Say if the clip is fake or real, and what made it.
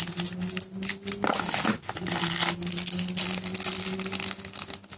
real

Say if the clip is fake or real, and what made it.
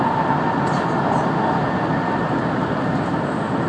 real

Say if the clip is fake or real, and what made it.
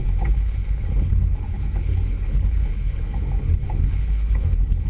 fake, codec, HILCodec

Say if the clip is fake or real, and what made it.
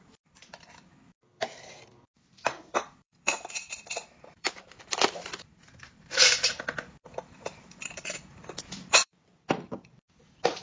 fake, vocoder, BigVGAN v2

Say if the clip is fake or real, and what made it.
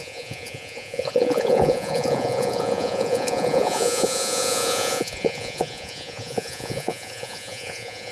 fake, vocoder, Vocos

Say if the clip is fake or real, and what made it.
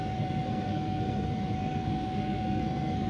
fake, codec, SNAC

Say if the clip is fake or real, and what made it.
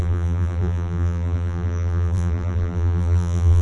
fake, vocoder, BigVGAN v2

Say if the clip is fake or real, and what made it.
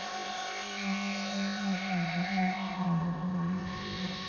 fake, codec, ZipCodec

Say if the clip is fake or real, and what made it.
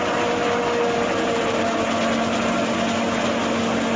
real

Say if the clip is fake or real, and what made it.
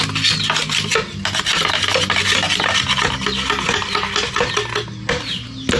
real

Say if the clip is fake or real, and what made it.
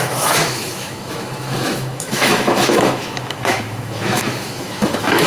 fake, autoencoder, DAC-VAE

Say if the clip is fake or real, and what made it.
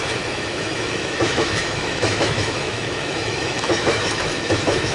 fake, autoencoder, DAC-VAE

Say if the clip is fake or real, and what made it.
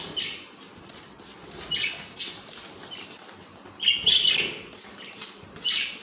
real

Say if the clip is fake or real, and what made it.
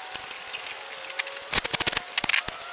real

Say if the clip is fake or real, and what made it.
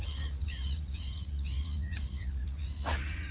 fake, vocoder, Vocos